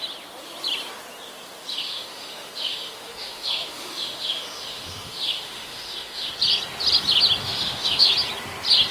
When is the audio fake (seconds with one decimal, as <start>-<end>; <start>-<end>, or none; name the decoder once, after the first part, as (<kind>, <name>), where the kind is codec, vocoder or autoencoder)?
1.7-6.3 (autoencoder, DAC-VAE); 7.4-8.1